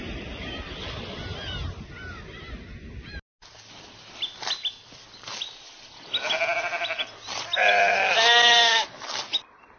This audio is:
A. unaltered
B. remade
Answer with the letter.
A